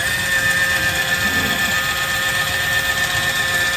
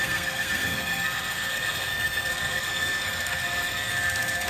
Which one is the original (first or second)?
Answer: first